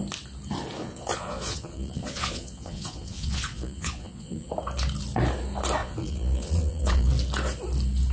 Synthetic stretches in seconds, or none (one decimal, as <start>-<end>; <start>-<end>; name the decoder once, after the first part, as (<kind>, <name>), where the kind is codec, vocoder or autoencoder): 0.8-4.5 (vocoder, Vocos); 5.8-7.1